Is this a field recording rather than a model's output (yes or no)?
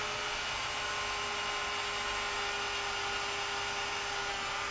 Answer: yes